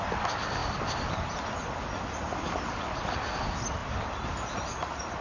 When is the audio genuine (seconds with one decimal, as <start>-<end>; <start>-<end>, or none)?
0.0-5.2